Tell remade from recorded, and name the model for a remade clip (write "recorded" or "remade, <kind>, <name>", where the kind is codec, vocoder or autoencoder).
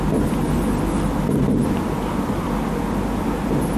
recorded